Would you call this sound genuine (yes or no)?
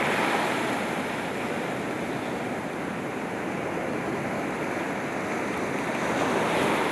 yes